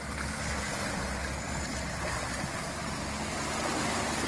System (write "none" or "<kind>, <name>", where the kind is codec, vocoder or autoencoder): none